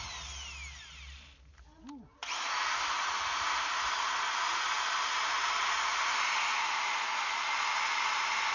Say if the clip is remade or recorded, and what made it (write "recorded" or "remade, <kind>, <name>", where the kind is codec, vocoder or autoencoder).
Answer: recorded